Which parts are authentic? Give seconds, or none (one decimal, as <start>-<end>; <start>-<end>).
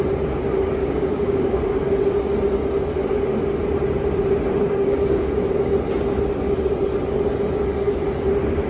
0.0-0.8; 1.6-4.6; 5.3-8.7